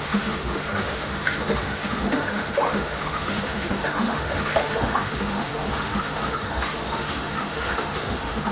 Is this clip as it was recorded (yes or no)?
no